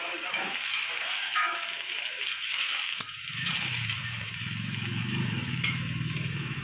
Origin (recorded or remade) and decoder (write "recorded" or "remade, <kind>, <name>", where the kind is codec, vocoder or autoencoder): remade, autoencoder, DAC-VAE